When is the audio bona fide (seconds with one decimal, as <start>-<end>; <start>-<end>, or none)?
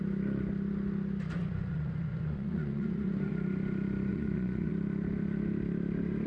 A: 0.0-1.4; 3.3-4.1; 4.7-6.3